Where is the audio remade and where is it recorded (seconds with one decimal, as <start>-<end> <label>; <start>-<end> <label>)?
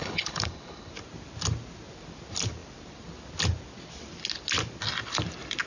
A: 0.0-0.9 remade; 0.9-5.7 recorded